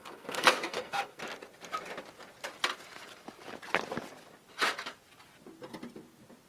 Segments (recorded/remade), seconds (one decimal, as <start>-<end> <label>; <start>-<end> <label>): 0.0-1.2 remade; 1.2-6.5 recorded